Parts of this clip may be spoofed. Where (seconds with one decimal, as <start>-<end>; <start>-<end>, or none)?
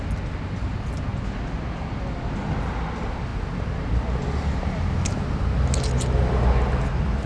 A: none